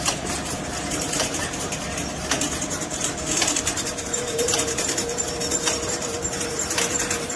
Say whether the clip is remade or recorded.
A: remade